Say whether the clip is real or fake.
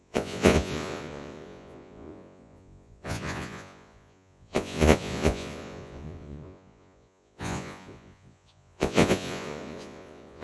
fake